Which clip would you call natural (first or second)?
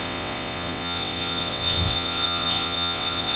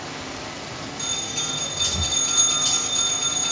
second